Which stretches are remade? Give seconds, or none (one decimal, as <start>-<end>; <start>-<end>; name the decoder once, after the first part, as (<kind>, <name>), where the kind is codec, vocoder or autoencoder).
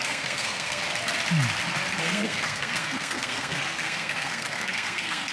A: 0.0-0.8 (codec, SNAC); 2.0-5.3